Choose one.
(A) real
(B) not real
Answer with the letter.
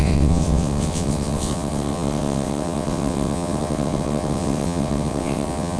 B